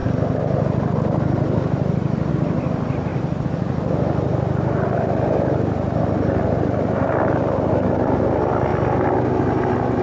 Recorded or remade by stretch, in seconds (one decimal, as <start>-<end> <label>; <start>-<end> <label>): 0.0-2.3 recorded; 2.3-3.1 remade; 3.1-7.7 recorded; 7.7-8.7 remade; 8.7-10.0 recorded